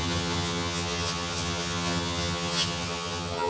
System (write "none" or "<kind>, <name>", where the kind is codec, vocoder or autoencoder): vocoder, HiFi-GAN